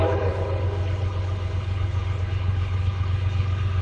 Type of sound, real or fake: fake